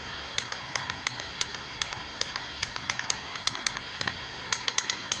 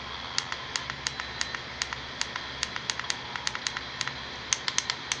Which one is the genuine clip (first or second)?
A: second